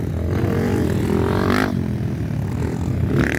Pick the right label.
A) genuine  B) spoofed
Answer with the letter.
A